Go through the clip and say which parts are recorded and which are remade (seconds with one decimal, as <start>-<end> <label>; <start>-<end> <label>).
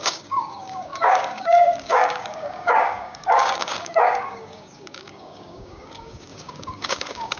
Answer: 0.0-7.4 remade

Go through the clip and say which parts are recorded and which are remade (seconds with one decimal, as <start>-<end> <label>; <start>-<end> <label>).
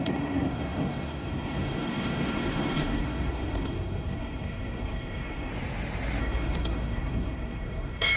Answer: 0.0-5.5 remade; 5.5-6.2 recorded; 6.2-8.2 remade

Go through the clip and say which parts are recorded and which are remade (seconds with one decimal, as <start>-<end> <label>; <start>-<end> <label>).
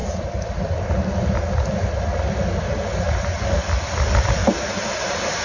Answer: 0.0-5.4 recorded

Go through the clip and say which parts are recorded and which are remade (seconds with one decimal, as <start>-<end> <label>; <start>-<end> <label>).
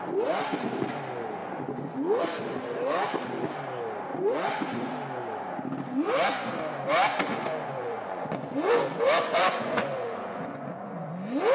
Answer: 0.0-1.4 recorded; 1.4-2.2 remade; 2.2-4.1 recorded; 4.1-4.9 remade; 4.9-7.3 recorded; 7.3-11.1 remade; 11.1-11.5 recorded